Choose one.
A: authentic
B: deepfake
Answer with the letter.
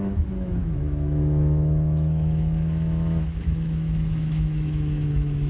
B